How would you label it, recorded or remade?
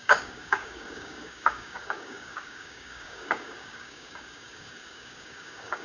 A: remade